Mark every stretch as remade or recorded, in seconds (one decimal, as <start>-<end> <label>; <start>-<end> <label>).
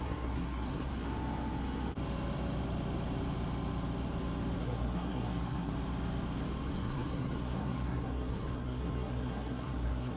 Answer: 0.0-0.9 remade; 0.9-4.6 recorded; 4.6-5.7 remade; 5.7-6.7 recorded; 6.7-10.2 remade